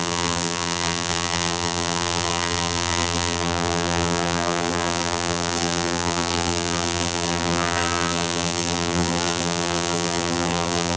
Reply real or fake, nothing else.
fake